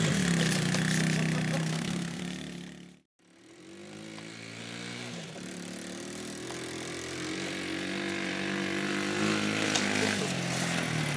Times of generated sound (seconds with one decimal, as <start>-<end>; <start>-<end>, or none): 1.6-2.2